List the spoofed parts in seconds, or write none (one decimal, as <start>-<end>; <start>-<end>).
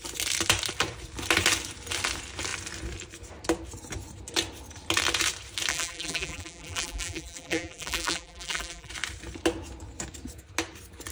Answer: 5.7-8.9